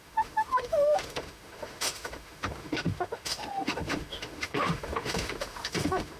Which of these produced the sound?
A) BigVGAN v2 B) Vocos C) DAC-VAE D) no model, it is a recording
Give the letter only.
C